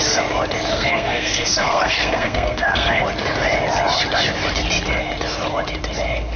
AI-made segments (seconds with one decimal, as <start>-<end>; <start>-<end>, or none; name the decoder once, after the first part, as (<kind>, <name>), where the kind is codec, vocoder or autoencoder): 0.7-3.0 (codec, SNAC)